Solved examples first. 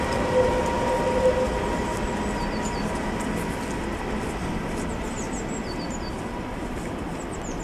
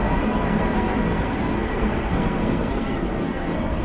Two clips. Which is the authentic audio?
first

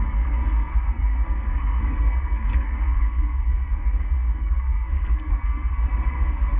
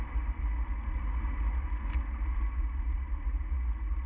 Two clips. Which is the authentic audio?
second